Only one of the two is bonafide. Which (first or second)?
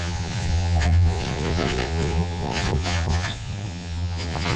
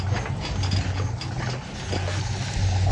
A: second